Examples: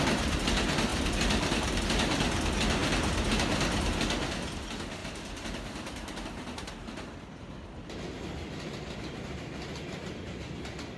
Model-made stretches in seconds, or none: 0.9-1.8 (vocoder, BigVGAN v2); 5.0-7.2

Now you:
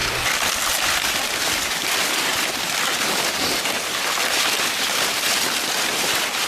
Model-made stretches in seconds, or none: none

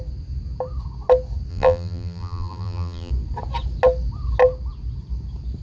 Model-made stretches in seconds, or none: 1.5-3.1 (vocoder, BigVGAN v2)

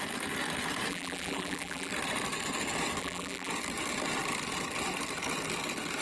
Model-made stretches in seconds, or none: 0.9-1.9 (vocoder, BigVGAN v2); 3.0-3.5

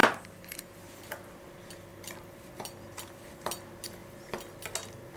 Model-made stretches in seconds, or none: 0.0-1.2 (vocoder, BigVGAN v2); 1.9-3.3